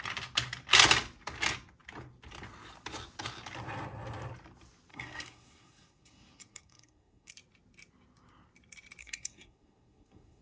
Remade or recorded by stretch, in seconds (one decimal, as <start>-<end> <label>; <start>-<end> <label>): 0.0-4.9 recorded; 4.9-7.3 remade; 7.3-9.0 recorded; 9.0-10.4 remade